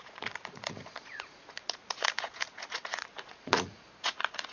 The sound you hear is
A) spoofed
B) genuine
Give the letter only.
A